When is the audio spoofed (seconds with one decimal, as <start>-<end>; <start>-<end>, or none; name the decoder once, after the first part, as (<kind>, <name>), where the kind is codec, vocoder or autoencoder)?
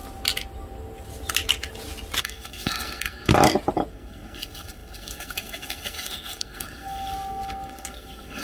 2.2-3.3 (codec, SNAC); 3.9-8.4